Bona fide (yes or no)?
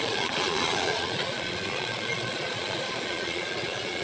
no